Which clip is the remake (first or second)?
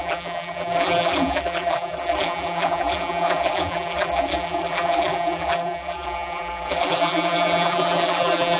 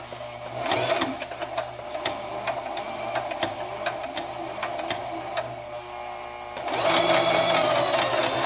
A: first